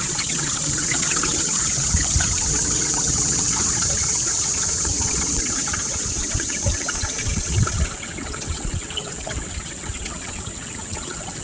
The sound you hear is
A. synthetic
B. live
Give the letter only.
A